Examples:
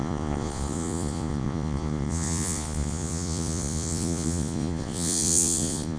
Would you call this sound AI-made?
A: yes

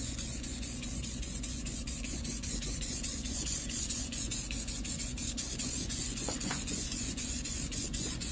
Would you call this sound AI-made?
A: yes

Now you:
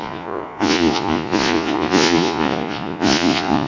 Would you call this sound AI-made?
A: yes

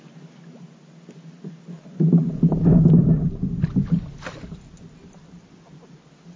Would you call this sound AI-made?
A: no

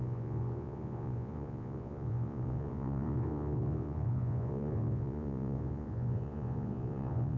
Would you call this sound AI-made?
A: yes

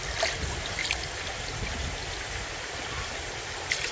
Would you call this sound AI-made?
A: no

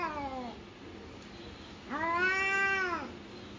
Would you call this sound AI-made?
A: no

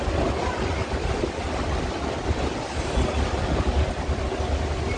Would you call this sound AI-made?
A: no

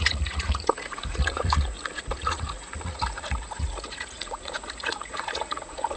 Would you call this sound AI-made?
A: yes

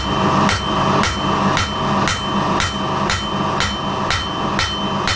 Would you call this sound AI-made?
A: no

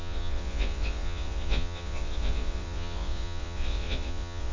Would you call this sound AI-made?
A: yes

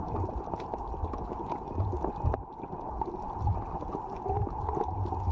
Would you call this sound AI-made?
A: no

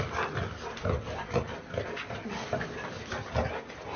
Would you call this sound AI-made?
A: no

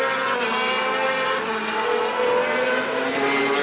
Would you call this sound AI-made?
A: no